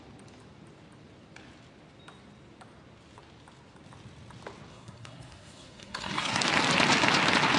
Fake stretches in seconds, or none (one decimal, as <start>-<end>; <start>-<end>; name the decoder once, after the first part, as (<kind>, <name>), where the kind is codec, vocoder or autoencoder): 4.7-6.4 (codec, SNAC)